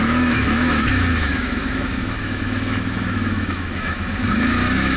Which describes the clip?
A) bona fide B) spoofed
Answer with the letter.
B